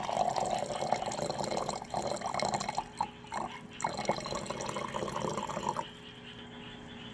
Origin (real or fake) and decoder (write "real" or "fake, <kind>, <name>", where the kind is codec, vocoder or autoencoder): real